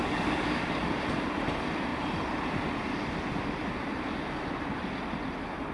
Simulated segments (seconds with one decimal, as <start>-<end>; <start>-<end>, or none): 0.0-1.0